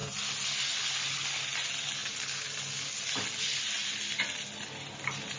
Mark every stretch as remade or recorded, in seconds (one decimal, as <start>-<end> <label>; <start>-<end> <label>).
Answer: 0.0-5.4 recorded